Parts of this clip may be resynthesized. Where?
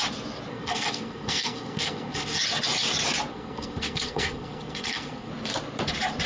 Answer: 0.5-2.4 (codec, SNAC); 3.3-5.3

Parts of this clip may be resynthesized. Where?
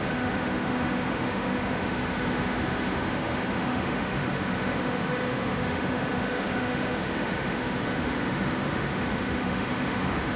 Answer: 0.0-10.4 (autoencoder, DAC-VAE)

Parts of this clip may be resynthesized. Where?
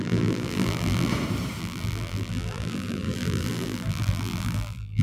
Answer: 0.0-1.1 (vocoder, BigVGAN v2); 1.6-5.0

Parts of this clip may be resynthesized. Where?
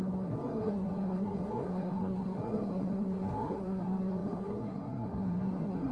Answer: 0.0-5.9 (codec, SNAC)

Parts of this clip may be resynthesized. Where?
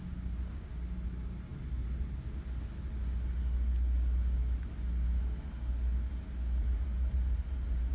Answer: 6.6-7.9 (vocoder, BigVGAN v2)